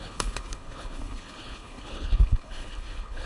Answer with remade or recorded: remade